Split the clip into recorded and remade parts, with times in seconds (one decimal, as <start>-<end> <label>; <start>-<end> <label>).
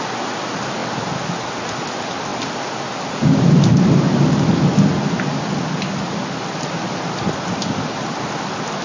0.0-8.8 recorded